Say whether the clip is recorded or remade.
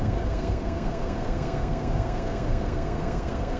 remade